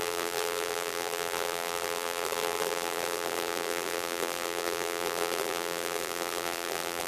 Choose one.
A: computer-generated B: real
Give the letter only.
A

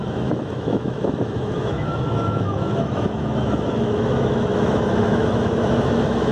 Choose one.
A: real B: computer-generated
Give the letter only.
B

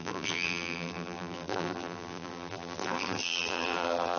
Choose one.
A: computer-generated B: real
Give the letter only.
A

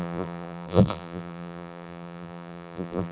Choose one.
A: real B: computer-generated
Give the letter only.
B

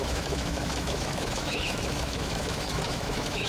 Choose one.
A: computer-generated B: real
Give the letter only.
A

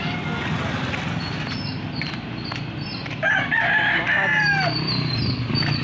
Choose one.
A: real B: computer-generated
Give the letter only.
A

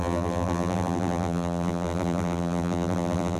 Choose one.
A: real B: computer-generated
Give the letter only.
B